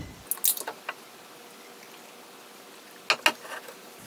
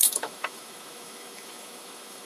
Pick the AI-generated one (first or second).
second